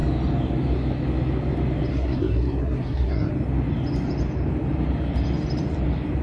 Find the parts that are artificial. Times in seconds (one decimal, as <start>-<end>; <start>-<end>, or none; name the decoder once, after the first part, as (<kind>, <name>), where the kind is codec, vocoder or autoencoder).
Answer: 1.9-3.3 (codec, SNAC)